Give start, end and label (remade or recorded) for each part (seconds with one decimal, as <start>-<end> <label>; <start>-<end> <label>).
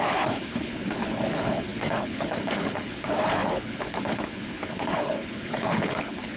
0.0-6.4 remade